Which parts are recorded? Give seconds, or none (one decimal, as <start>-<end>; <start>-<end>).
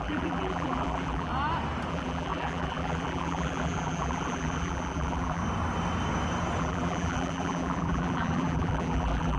1.3-1.9; 5.4-6.6